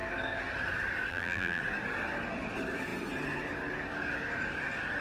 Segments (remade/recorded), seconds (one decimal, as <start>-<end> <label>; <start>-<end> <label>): 0.0-1.1 recorded; 1.1-1.6 remade; 1.6-5.0 recorded